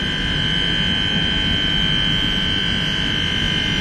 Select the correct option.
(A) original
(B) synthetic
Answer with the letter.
A